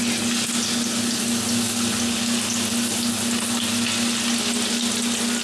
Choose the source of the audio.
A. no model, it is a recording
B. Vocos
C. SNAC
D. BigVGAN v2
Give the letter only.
A